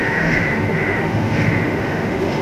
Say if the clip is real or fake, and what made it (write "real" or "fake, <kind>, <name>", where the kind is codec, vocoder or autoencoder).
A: fake, autoencoder, DAC-VAE